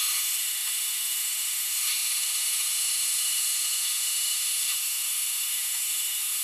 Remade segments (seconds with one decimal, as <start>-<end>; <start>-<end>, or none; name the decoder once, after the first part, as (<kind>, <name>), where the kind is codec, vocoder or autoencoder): 0.0-6.4 (autoencoder, DAC-VAE)